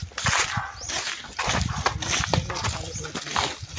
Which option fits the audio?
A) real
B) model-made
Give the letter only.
A